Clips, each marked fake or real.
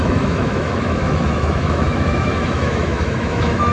fake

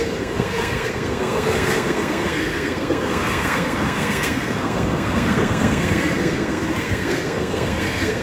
fake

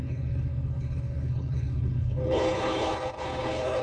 fake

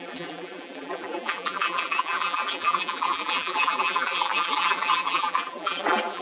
fake